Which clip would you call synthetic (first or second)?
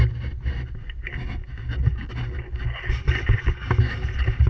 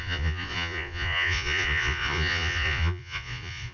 second